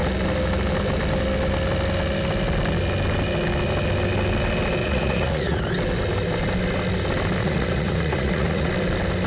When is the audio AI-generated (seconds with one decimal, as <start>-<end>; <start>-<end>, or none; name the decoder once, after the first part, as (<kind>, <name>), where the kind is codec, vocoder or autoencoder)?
4.8-5.6 (vocoder, Vocos); 7.4-8.7